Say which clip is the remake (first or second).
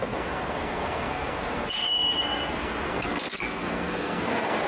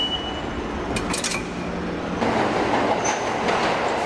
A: first